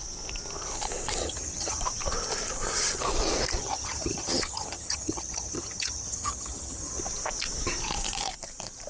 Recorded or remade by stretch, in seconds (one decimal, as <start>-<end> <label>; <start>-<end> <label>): 0.0-1.2 recorded; 1.2-1.8 remade; 1.8-3.6 recorded; 3.6-7.0 remade; 7.0-8.9 recorded

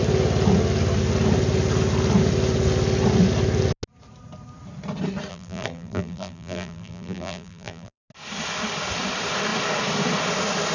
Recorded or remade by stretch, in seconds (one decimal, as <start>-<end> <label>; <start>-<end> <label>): 0.0-5.3 recorded; 5.3-8.0 remade; 8.0-10.7 recorded

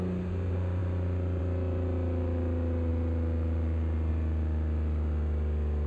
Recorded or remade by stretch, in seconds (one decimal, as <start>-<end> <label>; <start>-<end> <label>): 0.0-5.9 recorded

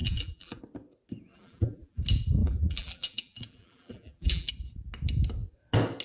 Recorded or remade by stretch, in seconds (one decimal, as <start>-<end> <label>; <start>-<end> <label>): 0.0-0.6 remade; 0.6-1.3 recorded; 1.3-2.0 remade; 2.0-2.4 recorded; 2.4-4.5 remade; 4.5-6.0 recorded

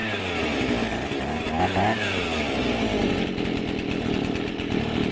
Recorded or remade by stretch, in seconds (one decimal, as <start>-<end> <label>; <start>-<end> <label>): 0.0-5.1 recorded

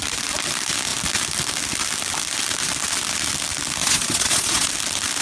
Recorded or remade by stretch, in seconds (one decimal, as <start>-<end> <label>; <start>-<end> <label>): 0.0-3.8 recorded; 3.8-4.7 remade; 4.7-5.2 recorded

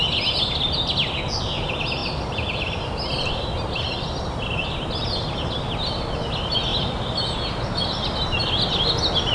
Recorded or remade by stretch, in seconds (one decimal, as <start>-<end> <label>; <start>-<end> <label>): 0.0-9.3 recorded